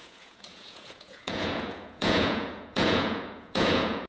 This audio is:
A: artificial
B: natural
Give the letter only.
A